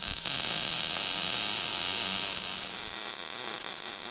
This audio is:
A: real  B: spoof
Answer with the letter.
A